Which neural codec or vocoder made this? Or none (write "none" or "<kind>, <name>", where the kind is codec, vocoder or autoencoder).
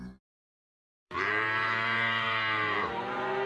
vocoder, BigVGAN v2